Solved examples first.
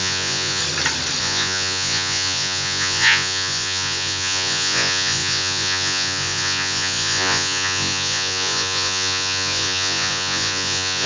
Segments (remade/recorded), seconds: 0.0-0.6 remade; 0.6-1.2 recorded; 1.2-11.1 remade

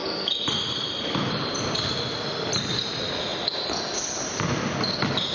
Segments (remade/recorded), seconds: 0.0-2.8 remade; 2.8-3.3 recorded; 3.3-4.2 remade; 4.2-5.3 recorded

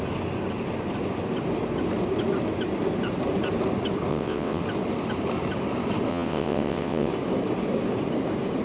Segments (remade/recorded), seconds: 0.0-4.1 recorded; 4.1-4.6 remade; 4.6-6.1 recorded; 6.1-7.1 remade; 7.1-8.6 recorded

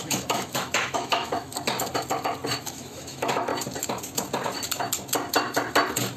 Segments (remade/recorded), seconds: 0.0-1.5 remade; 1.5-2.6 recorded; 2.6-3.5 remade; 3.5-6.2 recorded